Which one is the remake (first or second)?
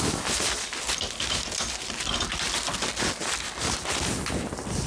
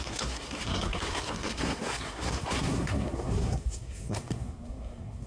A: second